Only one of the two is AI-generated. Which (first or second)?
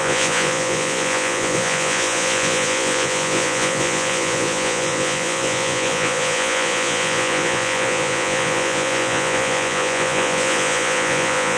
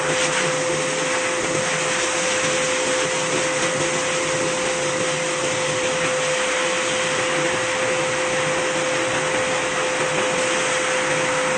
first